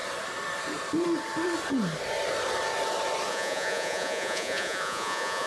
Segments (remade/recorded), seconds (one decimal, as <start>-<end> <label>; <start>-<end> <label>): 0.0-3.3 recorded; 3.3-5.5 remade